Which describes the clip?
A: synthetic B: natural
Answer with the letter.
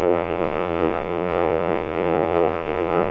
A